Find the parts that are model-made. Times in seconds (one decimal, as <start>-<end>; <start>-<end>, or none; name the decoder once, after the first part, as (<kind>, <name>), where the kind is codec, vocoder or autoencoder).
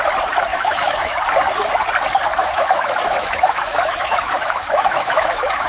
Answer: 0.5-1.2 (autoencoder, DAC-VAE); 2.4-5.7